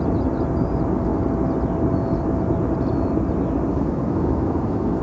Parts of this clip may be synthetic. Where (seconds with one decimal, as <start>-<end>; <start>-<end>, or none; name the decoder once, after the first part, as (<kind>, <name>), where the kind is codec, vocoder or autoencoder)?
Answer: 3.7-5.0 (codec, SNAC)